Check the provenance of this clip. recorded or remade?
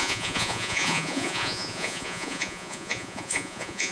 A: remade